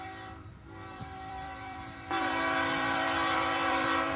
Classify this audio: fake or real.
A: fake